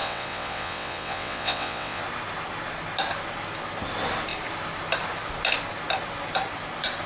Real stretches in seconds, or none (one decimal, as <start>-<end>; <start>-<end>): 2.0-7.1

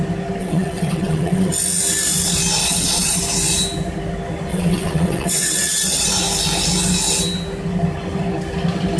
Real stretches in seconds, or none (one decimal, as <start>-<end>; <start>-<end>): 0.0-0.4; 1.5-2.6; 3.2-4.5; 6.1-9.0

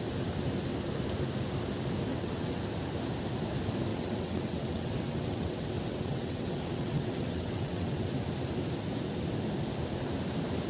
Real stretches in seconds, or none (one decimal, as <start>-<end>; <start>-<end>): 0.0-2.1; 2.6-3.9; 8.1-10.7

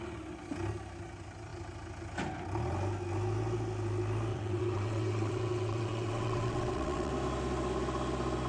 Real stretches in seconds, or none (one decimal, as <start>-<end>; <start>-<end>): 0.0-4.3; 7.1-8.5